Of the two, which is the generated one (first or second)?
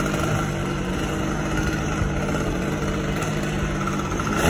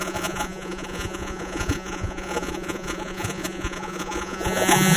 second